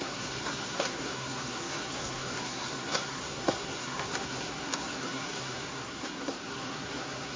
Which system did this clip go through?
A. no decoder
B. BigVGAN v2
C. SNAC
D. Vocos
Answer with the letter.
C